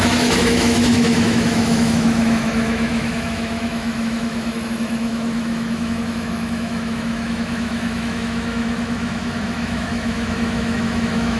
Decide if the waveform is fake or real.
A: fake